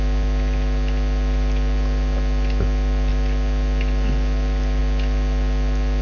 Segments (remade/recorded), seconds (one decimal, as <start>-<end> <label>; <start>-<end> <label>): 0.0-6.0 recorded